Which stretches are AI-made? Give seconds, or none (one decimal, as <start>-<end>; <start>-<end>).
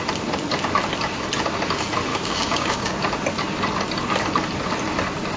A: 2.1-2.9